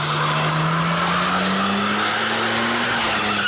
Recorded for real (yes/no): yes